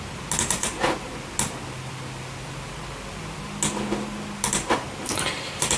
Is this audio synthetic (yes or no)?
no